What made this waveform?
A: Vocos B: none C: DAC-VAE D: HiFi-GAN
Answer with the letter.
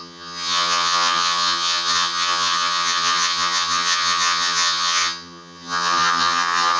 D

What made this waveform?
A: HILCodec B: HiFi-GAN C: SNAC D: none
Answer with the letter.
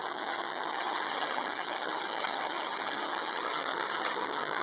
B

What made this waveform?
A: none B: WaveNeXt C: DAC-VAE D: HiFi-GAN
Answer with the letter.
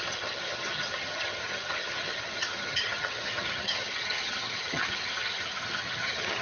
D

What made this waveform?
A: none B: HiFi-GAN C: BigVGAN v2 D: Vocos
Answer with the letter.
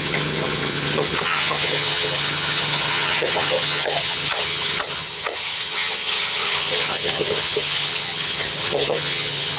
B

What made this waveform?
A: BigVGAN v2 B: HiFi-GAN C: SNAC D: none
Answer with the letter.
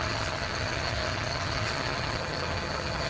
B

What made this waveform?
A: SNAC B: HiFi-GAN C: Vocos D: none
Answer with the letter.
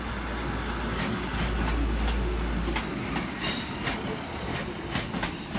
D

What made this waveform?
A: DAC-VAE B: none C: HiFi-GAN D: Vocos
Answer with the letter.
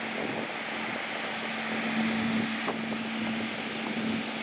B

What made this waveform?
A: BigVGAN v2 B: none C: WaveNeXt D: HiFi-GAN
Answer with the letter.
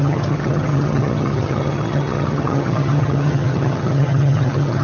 D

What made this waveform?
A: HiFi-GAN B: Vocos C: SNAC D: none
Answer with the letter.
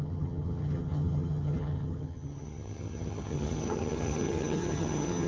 A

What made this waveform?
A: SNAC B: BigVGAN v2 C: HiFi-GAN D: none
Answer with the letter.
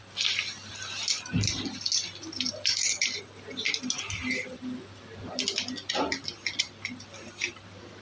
D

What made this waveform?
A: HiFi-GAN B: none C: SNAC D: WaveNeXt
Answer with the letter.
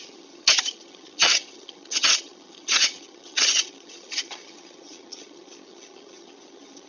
A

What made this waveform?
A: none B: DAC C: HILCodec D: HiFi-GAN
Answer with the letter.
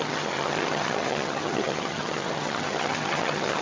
D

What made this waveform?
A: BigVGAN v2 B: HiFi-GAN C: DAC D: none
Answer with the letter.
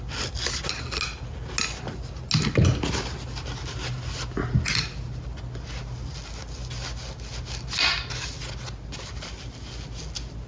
D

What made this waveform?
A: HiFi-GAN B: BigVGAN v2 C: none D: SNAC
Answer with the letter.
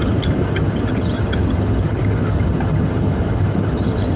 A